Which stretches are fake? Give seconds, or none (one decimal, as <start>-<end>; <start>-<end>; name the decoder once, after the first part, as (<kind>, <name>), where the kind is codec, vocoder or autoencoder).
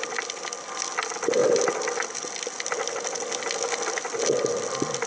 none